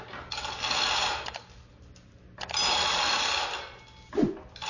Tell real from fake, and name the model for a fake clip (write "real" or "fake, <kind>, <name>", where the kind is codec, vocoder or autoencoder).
real